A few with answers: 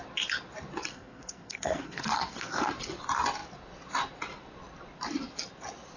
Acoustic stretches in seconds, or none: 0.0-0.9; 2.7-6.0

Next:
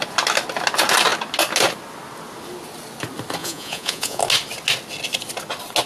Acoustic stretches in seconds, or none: 0.0-3.4; 4.2-5.9

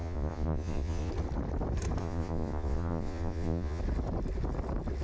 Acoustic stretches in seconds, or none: 1.1-2.0; 3.8-5.0

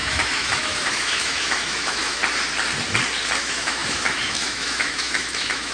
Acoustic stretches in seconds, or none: 2.2-3.4

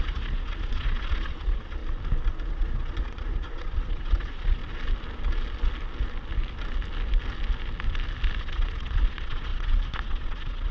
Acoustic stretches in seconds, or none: 1.8-2.5; 4.6-8.4

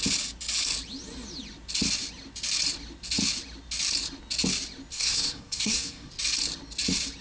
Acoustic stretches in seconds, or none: 0.0-4.9; 6.1-7.2

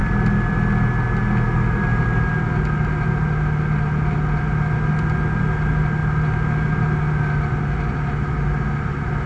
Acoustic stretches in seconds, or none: 0.0-9.3

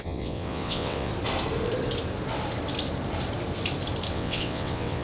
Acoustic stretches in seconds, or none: 1.1-4.1